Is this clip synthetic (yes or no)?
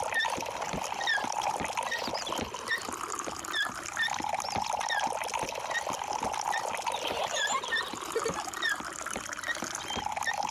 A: no